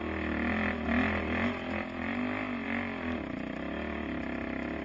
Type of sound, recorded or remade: recorded